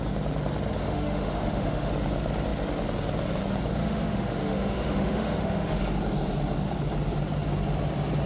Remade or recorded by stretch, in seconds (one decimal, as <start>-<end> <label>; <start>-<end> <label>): 0.0-0.8 recorded; 0.8-1.9 remade; 1.9-3.8 recorded; 3.8-5.8 remade; 5.8-8.3 recorded